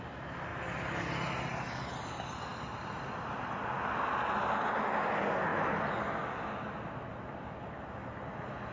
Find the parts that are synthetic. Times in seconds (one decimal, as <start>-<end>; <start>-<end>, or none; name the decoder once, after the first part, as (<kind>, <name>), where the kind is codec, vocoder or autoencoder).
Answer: none